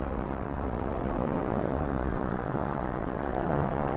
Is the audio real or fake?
fake